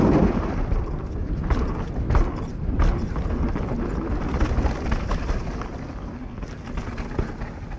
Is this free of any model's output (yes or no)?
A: yes